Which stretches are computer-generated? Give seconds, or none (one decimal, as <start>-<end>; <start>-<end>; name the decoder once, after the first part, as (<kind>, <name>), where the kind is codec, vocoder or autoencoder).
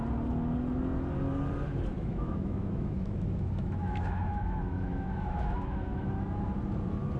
1.9-6.1 (autoencoder, DAC-VAE)